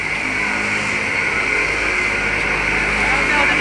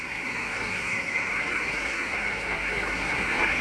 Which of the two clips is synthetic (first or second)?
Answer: second